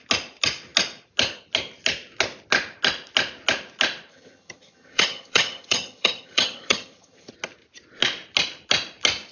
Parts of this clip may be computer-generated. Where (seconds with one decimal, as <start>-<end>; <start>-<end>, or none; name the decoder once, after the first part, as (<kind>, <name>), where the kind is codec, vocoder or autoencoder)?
4.1-7.3 (vocoder, HiFi-GAN)